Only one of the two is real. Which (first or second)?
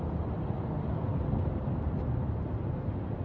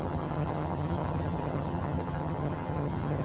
first